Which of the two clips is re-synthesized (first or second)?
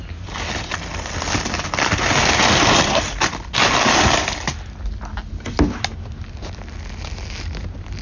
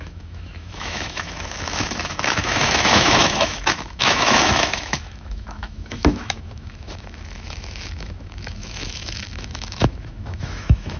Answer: second